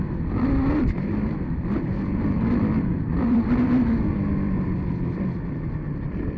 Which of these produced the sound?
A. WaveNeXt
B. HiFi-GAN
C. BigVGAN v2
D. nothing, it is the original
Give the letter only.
C